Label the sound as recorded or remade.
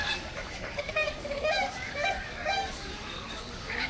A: remade